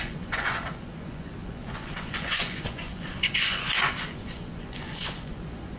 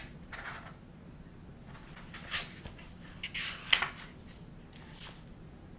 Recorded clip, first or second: second